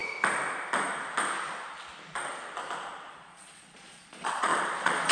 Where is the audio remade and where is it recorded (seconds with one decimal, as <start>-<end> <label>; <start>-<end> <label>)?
0.0-3.1 recorded; 3.1-5.1 remade